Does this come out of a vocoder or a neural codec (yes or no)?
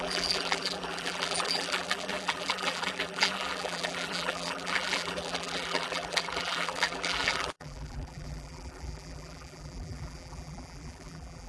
yes